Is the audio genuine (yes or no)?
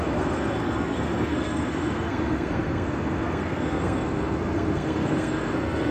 no